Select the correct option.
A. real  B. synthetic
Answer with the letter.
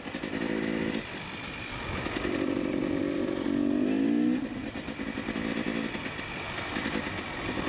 A